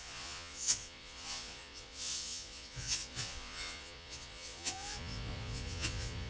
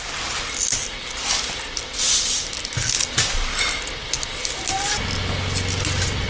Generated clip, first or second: first